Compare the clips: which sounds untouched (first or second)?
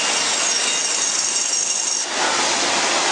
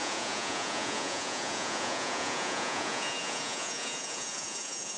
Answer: first